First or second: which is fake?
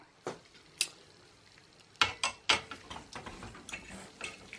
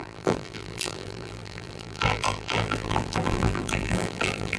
second